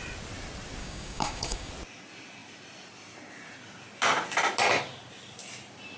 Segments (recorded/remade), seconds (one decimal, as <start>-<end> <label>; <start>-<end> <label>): 0.0-0.8 recorded; 0.8-1.7 remade; 1.7-6.0 recorded